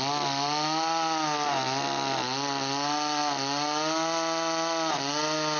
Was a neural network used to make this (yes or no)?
no